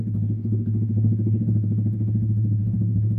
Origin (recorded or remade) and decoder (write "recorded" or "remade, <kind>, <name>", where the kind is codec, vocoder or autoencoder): remade, codec, DAC